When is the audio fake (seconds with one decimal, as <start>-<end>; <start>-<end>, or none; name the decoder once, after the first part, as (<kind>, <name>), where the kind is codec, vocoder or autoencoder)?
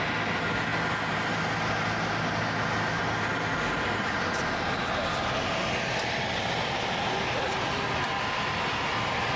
none